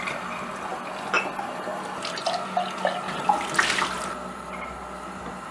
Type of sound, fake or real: real